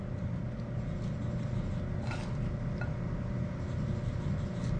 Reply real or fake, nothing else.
real